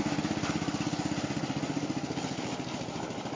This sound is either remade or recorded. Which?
recorded